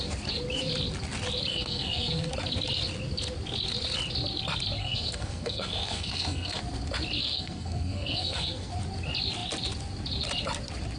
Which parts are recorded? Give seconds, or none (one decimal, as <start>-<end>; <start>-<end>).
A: 0.0-1.5; 2.3-4.8; 6.6-7.2; 8.7-11.0

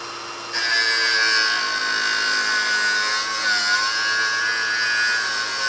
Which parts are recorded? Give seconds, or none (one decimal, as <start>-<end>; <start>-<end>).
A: 0.0-5.7